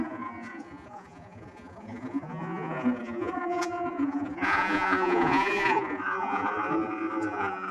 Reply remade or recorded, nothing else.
remade